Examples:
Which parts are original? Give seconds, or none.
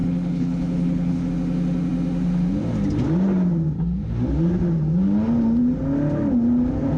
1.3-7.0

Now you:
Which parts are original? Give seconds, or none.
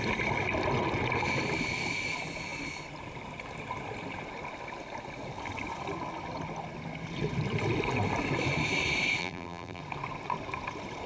0.0-9.2; 9.8-11.1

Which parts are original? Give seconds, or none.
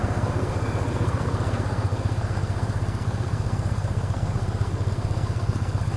none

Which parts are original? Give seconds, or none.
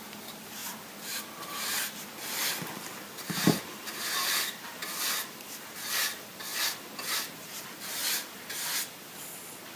0.6-4.0; 4.8-5.4; 6.5-7.3; 8.0-9.8